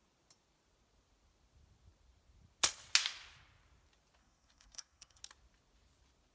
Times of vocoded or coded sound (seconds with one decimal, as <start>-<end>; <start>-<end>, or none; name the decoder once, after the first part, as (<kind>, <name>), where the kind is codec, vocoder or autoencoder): 4.2-5.2 (codec, SNAC)